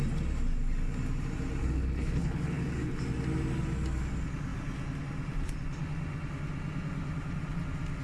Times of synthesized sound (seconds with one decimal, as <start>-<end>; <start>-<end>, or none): 1.6-3.0